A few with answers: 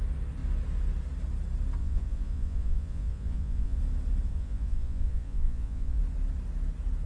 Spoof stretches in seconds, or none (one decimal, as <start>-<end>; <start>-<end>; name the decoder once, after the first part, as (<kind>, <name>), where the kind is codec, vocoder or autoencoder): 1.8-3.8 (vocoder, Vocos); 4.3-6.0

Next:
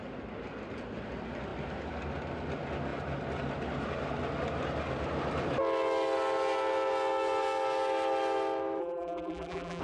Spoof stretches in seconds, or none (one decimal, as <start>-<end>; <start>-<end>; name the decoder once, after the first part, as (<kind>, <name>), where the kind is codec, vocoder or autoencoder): 8.8-9.8 (vocoder, BigVGAN v2)

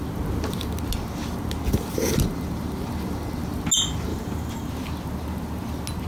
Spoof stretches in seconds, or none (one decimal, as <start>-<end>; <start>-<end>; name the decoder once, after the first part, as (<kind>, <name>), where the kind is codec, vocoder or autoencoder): 4.1-4.7 (vocoder, BigVGAN v2)

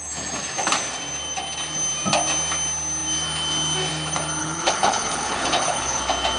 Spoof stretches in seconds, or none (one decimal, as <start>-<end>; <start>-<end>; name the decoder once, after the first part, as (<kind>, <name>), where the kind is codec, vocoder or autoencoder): 4.4-6.0 (codec, HILCodec)

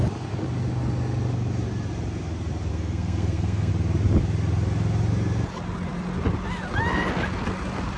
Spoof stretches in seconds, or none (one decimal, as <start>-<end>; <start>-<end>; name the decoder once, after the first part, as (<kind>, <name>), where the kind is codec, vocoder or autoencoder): 2.7-3.7 (codec, SNAC)